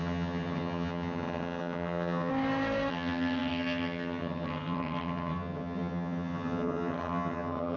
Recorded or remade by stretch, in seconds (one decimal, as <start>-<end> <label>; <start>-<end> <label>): 0.0-2.3 remade; 2.3-2.9 recorded; 2.9-7.8 remade